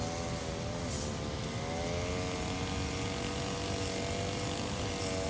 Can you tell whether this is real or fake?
real